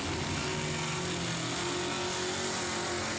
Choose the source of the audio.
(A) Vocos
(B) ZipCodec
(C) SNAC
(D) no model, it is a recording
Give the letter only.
D